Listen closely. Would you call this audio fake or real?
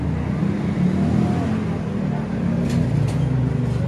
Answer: real